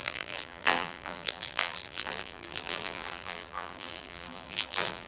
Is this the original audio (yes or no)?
no